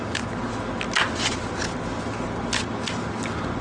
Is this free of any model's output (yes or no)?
yes